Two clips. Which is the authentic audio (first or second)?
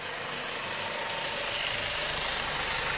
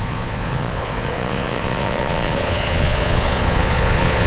first